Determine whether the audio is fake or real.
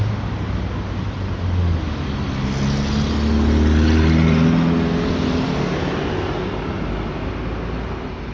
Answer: real